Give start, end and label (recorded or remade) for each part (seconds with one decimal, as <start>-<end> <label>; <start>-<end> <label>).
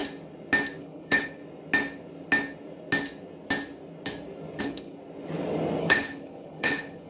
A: 0.0-0.8 recorded; 0.8-1.4 remade; 1.4-4.6 recorded; 4.6-5.0 remade; 5.0-5.8 recorded; 5.8-7.1 remade